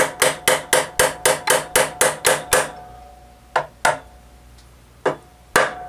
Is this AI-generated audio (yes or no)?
no